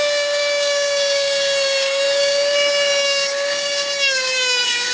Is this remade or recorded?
remade